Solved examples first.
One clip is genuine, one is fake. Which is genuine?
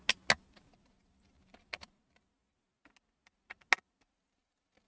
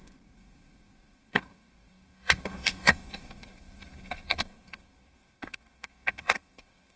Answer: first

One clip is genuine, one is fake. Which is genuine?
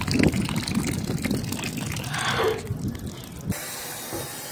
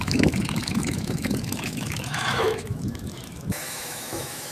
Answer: first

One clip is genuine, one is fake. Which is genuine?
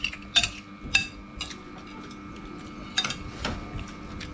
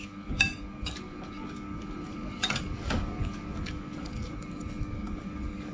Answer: first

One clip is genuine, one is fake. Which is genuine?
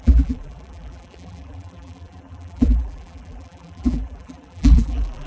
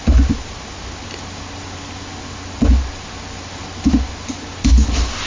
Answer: second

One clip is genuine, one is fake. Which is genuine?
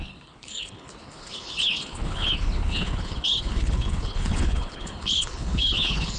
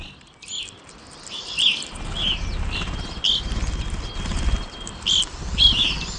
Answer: second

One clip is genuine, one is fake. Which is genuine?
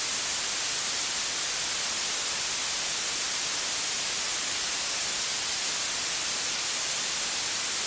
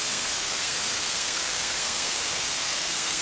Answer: first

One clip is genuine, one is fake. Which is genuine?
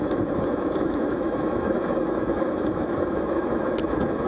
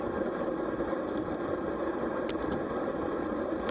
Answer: second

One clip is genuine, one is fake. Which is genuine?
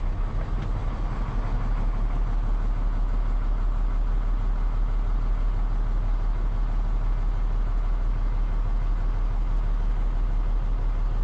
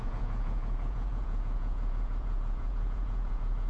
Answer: first